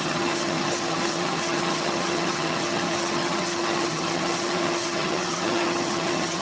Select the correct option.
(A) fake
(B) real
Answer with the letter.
A